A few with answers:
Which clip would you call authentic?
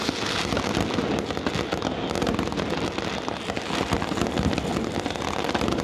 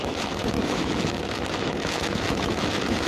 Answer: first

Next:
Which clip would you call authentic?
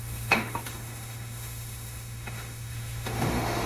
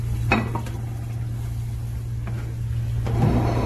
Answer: second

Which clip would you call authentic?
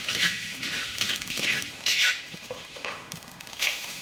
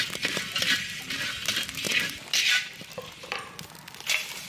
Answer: second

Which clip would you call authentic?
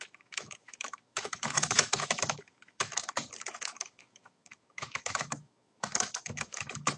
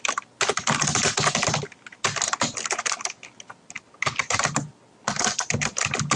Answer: second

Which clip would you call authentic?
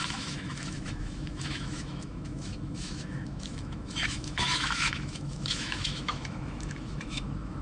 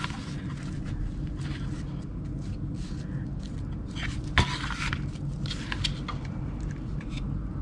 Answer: second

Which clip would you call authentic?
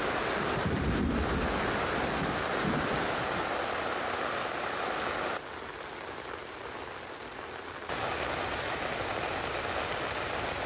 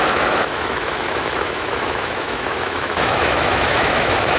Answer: first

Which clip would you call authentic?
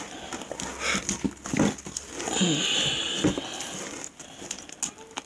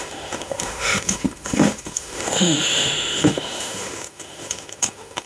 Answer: first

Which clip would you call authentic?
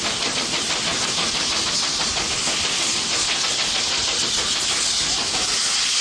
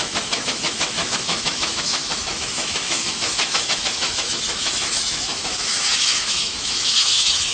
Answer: first